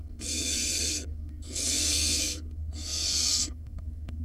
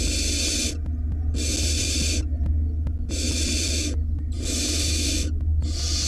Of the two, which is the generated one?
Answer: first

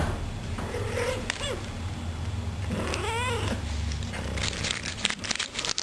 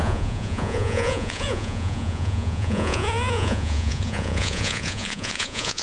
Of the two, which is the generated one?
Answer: second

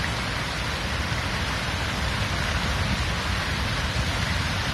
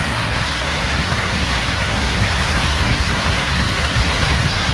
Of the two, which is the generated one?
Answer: second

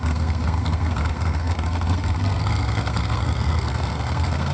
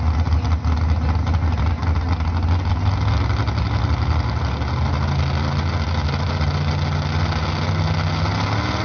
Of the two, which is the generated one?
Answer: first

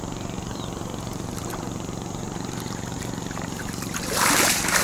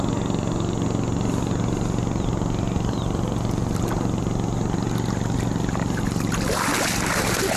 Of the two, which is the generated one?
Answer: first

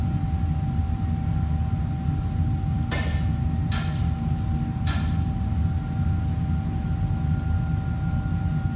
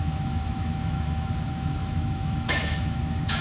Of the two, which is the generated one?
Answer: second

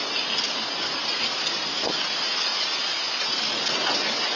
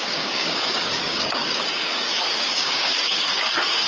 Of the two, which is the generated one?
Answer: second